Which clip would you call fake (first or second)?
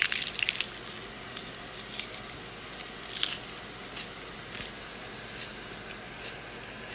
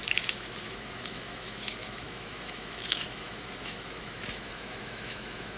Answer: second